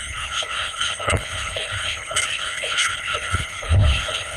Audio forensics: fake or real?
fake